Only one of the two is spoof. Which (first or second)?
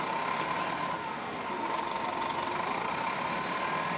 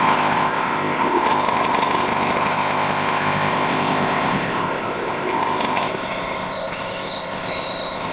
second